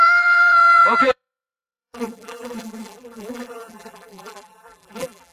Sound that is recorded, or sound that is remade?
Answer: remade